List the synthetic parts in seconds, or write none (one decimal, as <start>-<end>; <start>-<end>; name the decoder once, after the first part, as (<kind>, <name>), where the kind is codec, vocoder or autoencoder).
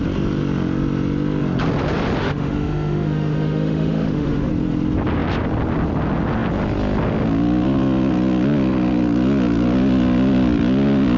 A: 2.2-4.5 (autoencoder, DAC-VAE)